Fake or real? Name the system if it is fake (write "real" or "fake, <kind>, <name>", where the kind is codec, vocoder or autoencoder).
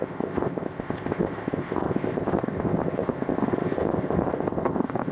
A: fake, codec, ZipCodec